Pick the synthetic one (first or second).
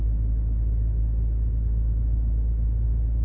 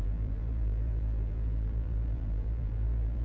second